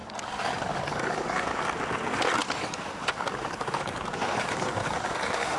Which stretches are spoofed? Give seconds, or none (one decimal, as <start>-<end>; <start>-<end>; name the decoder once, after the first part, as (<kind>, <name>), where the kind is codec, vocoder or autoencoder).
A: 0.0-1.6 (codec, DAC); 2.4-5.6